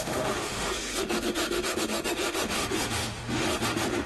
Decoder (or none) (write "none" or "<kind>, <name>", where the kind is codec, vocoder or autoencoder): autoencoder, DAC-VAE